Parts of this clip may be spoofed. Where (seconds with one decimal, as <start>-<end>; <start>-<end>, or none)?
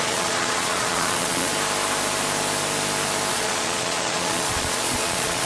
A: 0.0-1.5; 3.3-5.5